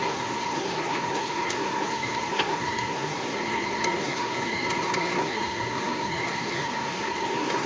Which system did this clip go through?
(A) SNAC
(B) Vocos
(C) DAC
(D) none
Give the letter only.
A